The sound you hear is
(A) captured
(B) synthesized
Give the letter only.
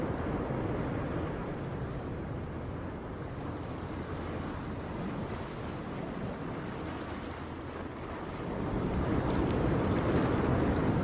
A